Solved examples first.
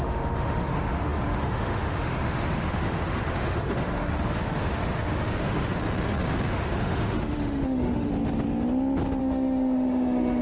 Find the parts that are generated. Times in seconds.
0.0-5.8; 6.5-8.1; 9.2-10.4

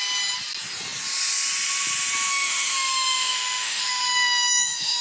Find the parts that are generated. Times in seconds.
2.3-5.0

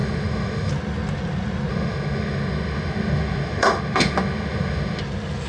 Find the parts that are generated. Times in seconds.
0.0-0.7; 1.7-5.0

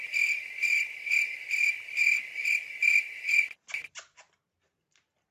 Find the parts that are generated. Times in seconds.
none

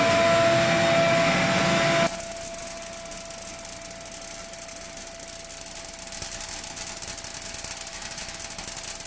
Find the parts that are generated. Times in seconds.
7.9-8.4

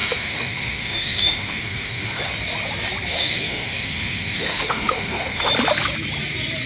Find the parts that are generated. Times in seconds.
0.0-2.2; 3.1-5.5